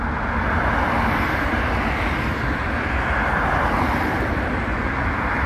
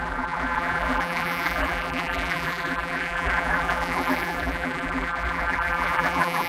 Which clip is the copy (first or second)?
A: second